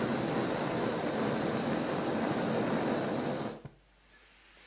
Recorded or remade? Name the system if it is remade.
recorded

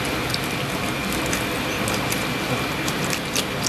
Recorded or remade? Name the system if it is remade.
recorded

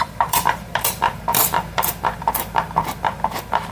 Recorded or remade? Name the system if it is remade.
remade, vocoder, BigVGAN v2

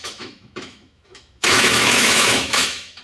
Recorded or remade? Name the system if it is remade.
remade, autoencoder, DAC-VAE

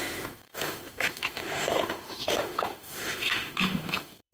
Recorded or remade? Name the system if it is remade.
remade, autoencoder, DAC-VAE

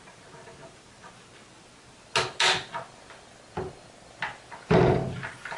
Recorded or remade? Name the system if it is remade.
recorded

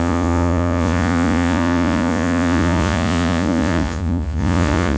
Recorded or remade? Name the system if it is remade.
remade, vocoder, Vocos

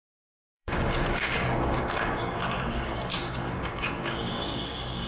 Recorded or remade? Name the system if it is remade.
remade, codec, DAC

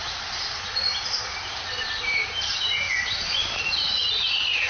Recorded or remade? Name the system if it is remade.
recorded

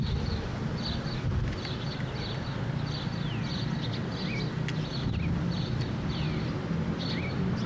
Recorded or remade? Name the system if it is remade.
recorded